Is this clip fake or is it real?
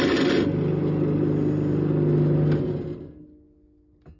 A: real